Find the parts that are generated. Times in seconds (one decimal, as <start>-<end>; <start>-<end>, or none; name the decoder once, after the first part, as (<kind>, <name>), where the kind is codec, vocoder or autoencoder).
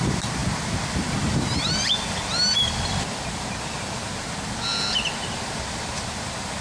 none